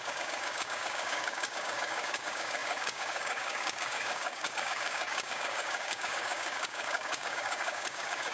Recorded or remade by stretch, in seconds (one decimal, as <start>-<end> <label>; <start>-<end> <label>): 0.0-8.3 remade

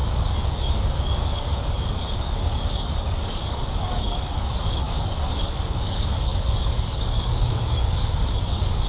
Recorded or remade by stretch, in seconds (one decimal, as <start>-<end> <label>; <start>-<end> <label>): 0.0-8.9 remade

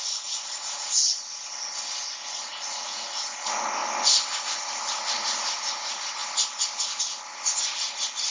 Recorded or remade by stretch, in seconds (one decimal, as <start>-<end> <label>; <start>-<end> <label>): 0.0-1.1 remade; 1.1-2.3 recorded; 2.3-3.8 remade; 3.8-4.4 recorded; 4.4-6.2 remade; 6.2-7.6 recorded; 7.6-8.3 remade

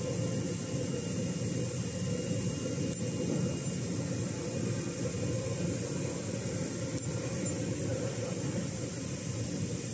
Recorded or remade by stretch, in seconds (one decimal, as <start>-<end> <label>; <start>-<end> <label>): 0.0-7.9 recorded; 7.9-8.9 remade; 8.9-9.9 recorded